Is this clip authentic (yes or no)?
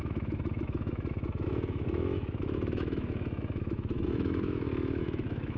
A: no